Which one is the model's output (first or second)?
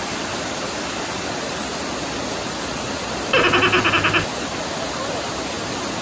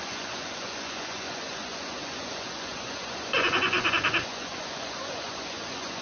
second